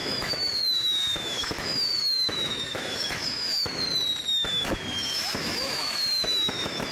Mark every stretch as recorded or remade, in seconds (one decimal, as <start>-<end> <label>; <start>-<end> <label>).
0.0-3.8 remade; 3.8-4.3 recorded; 4.3-6.9 remade